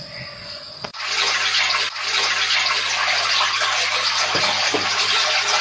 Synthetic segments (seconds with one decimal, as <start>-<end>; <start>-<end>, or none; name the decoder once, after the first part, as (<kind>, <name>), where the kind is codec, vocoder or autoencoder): none